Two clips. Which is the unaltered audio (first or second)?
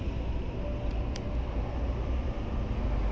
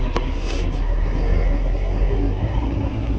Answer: first